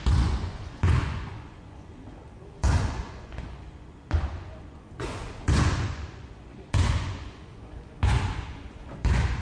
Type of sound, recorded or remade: remade